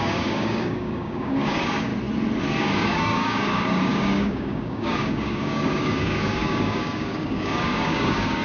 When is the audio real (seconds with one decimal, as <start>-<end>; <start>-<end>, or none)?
1.9-2.6